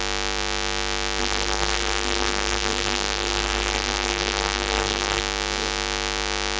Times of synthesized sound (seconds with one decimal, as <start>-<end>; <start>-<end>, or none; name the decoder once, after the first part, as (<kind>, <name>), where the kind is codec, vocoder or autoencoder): 1.2-5.2 (codec, SNAC)